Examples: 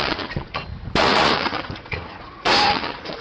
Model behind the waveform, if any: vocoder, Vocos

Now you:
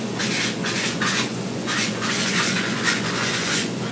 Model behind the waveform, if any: vocoder, Vocos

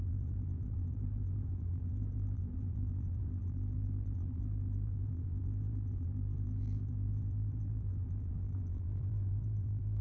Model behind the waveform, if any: vocoder, BigVGAN v2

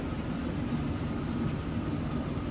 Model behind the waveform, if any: none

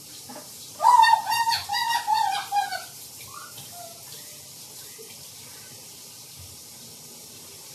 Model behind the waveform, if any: none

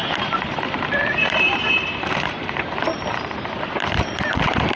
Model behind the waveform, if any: vocoder, BigVGAN v2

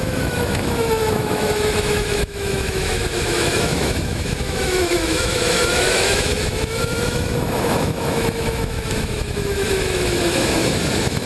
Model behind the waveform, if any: autoencoder, DAC-VAE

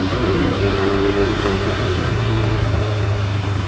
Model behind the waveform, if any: codec, SNAC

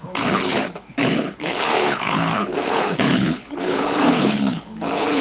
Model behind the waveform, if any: codec, HILCodec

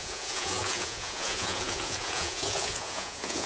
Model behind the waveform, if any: vocoder, Vocos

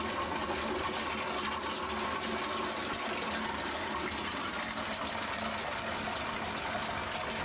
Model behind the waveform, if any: none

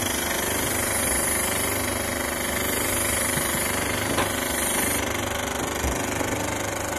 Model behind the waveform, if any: none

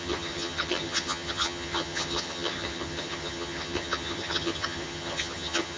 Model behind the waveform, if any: vocoder, HiFi-GAN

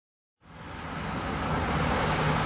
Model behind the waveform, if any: none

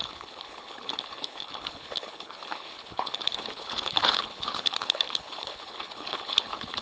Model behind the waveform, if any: codec, HILCodec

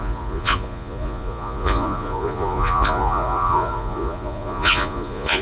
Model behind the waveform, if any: vocoder, Vocos